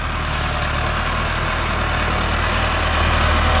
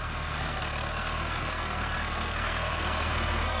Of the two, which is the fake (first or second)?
second